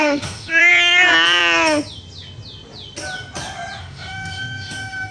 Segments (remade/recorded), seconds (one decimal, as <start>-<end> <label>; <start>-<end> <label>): 0.0-0.7 remade; 0.7-3.8 recorded; 3.8-5.1 remade